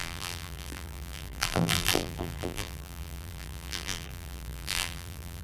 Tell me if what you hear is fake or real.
fake